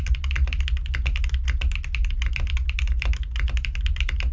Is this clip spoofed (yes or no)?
no